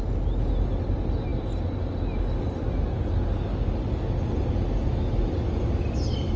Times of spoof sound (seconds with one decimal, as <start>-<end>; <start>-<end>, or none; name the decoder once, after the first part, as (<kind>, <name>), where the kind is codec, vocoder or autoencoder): none